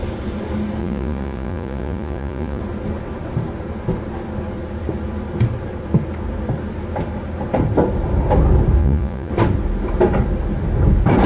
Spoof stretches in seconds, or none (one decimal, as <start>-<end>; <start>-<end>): 0.8-2.6; 8.8-9.3